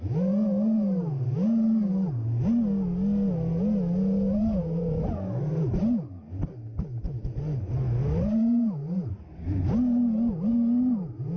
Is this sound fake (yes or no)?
no